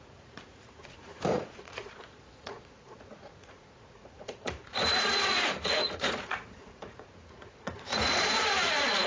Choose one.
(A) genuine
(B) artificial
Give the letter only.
B